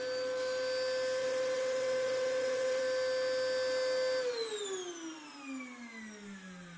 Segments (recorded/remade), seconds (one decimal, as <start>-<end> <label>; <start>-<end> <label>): 0.0-1.2 recorded; 1.2-2.8 remade; 2.8-6.8 recorded